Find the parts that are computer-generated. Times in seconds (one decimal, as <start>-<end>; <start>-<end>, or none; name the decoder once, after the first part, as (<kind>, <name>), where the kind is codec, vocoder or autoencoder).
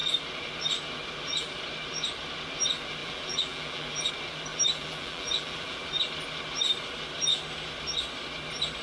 3.0-4.1 (vocoder, BigVGAN v2); 4.5-5.9